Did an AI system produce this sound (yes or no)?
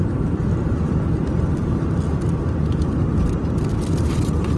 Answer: no